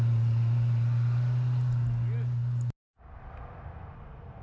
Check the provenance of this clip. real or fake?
real